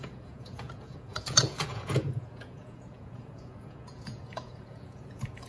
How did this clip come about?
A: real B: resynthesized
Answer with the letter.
B